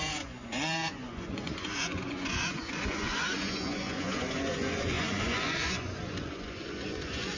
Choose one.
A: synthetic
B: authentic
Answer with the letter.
A